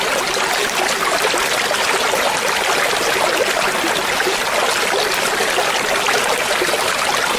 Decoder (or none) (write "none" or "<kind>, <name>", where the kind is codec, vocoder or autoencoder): none